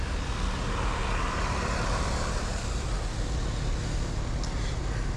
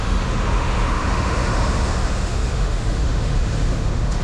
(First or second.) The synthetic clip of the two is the second